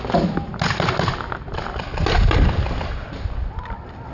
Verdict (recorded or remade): recorded